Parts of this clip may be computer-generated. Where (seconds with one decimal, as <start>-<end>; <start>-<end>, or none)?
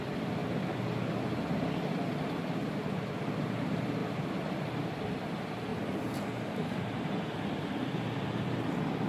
0.0-0.4; 3.4-4.0; 4.6-9.1